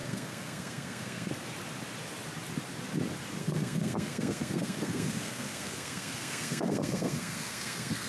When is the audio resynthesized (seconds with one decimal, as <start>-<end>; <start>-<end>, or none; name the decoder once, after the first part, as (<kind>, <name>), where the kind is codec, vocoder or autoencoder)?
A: 0.0-1.3 (codec, SNAC); 3.4-8.1